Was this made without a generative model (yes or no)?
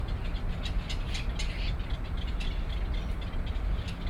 yes